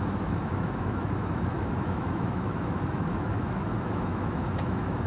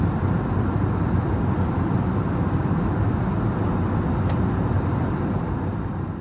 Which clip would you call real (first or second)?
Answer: second